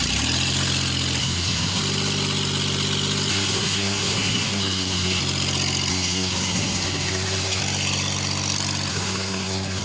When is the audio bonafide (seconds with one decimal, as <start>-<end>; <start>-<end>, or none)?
0.0-1.2; 1.8-3.3; 5.2-5.9; 7.6-8.9